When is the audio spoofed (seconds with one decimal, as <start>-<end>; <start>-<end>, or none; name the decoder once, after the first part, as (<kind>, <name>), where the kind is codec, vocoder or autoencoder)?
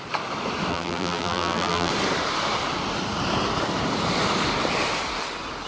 0.7-1.9 (vocoder, BigVGAN v2)